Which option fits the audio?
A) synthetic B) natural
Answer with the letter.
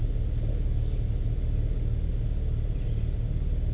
B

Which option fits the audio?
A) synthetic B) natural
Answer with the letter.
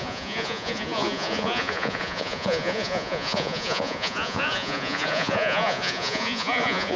A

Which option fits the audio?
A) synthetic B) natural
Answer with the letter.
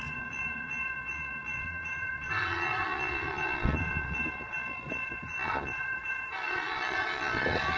A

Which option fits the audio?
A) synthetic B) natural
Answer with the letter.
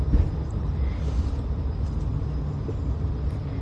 B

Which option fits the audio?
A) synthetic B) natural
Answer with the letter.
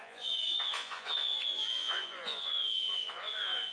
A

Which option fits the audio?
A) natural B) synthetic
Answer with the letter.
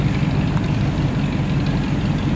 A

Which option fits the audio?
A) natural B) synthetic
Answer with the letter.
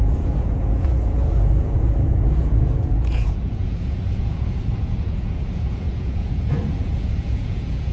B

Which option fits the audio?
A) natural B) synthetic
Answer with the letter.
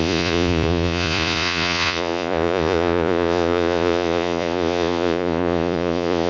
B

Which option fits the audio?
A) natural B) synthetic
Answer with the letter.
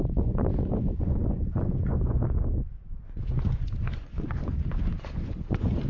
B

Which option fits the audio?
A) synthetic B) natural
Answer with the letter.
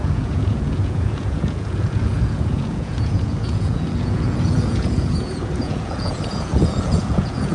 A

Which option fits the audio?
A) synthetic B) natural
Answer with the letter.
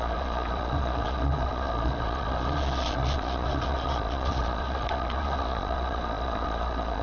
A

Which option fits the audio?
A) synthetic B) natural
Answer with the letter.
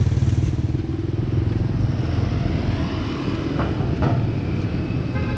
B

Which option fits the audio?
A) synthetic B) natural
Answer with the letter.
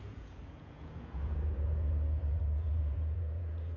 A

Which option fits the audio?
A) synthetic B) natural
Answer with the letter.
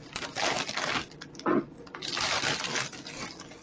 B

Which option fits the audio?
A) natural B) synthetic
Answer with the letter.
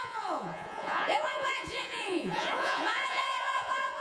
B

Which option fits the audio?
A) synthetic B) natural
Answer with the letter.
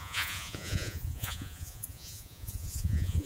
A